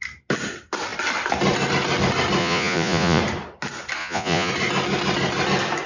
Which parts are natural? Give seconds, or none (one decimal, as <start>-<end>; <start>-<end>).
0.0-2.4; 3.2-4.0; 4.5-5.9